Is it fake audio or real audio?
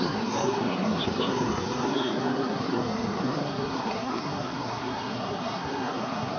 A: fake